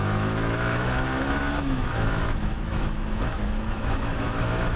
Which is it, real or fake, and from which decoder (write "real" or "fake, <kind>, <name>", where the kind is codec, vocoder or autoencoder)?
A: fake, autoencoder, DAC-VAE